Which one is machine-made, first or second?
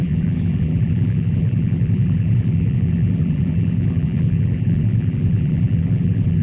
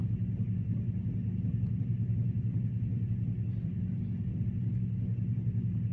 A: first